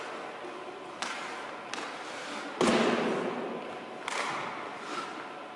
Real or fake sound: real